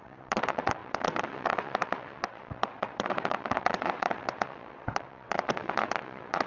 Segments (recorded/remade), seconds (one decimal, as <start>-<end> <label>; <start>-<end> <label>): 0.0-6.5 remade